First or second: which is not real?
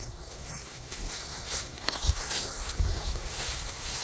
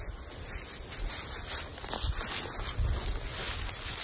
first